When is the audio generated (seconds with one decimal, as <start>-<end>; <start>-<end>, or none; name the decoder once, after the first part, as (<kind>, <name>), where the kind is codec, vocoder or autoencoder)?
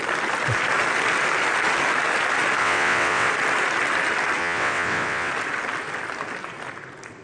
2.6-3.3 (vocoder, WaveNeXt); 4.4-5.3